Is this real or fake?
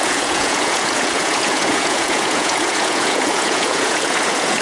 fake